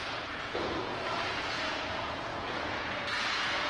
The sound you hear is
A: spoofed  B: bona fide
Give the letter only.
A